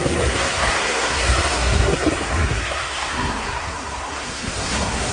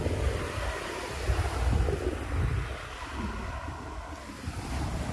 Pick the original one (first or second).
second